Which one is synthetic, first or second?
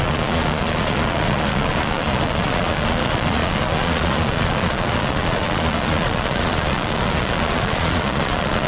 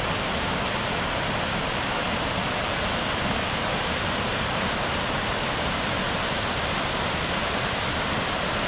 first